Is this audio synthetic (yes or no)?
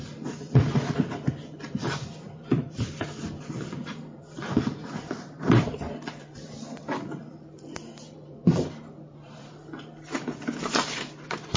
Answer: yes